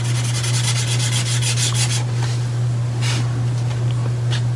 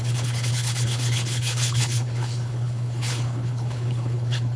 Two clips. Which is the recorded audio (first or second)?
first